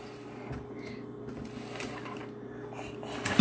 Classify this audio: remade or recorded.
recorded